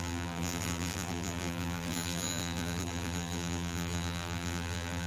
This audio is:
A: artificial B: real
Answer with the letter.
A